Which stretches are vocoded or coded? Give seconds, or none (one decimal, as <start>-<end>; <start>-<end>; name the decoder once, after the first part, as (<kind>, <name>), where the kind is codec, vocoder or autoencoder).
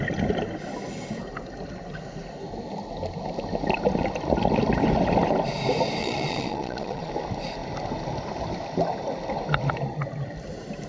6.0-7.1 (vocoder, Vocos)